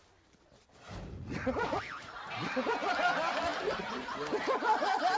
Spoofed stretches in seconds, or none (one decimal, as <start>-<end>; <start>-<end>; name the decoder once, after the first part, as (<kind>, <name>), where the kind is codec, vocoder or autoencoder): 1.2-2.9 (vocoder, Vocos)